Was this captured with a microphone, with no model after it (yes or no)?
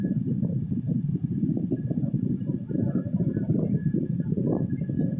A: no